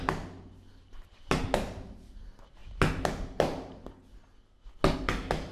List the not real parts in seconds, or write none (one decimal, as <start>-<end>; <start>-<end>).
none